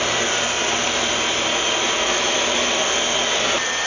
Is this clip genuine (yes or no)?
yes